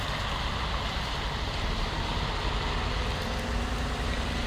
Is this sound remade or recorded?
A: recorded